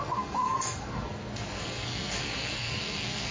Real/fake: fake